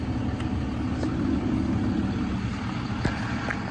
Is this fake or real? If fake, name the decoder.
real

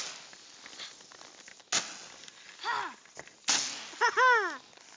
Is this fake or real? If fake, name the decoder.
real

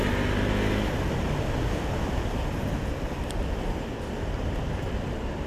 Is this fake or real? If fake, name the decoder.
real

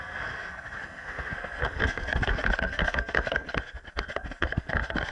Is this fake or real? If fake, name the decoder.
fake, codec, SNAC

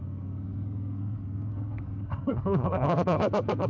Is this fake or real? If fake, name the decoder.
fake, codec, SNAC